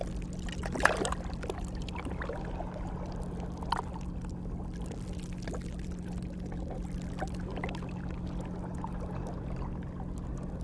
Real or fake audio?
real